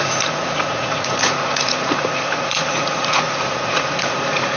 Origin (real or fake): fake